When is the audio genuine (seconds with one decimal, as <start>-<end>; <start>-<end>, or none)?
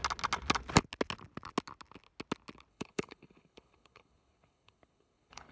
0.0-2.7